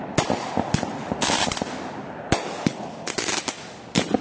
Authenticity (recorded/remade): recorded